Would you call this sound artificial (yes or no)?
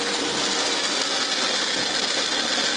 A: no